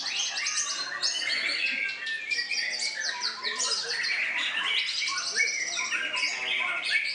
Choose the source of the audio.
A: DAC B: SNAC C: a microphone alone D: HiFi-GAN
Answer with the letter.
C